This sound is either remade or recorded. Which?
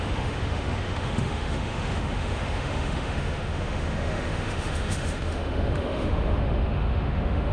remade